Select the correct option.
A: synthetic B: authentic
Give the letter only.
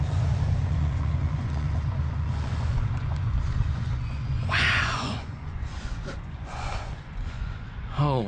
A